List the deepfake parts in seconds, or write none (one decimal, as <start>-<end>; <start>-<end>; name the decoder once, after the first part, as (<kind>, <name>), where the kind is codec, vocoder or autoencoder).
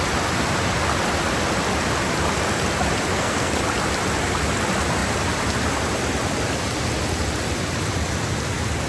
3.1-3.6 (codec, SNAC)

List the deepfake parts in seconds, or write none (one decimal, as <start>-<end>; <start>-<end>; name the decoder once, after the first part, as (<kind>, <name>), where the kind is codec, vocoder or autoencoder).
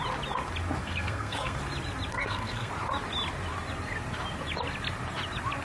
0.8-1.6 (codec, SNAC); 2.1-2.7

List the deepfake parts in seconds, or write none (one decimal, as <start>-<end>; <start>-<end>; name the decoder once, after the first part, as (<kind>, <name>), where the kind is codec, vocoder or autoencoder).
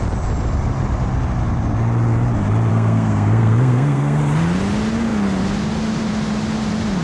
2.7-4.2 (codec, SNAC)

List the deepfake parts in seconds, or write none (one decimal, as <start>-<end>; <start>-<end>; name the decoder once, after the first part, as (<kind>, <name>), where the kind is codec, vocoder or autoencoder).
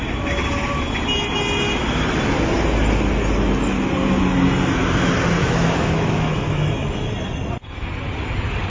5.4-7.1 (autoencoder, DAC-VAE)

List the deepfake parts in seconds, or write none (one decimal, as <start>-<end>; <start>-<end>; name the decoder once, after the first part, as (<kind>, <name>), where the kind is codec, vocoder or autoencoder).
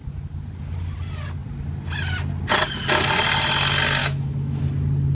4.0-4.6 (autoencoder, DAC-VAE)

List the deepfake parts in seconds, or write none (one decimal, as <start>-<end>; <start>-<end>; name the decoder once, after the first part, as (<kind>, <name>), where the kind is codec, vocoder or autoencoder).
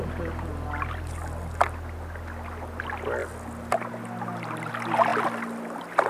none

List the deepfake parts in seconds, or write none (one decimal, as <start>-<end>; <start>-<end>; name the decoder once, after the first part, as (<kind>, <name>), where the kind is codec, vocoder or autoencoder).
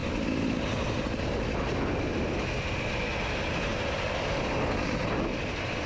none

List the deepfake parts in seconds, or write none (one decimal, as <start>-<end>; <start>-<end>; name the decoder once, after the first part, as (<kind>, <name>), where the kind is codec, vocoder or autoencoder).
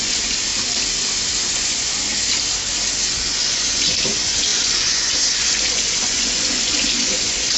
0.0-0.5 (vocoder, Vocos); 1.5-2.1; 3.1-7.6